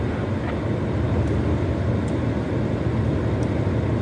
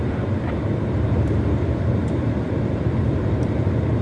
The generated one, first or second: second